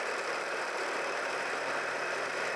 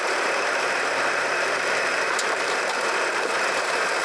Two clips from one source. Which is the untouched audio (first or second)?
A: first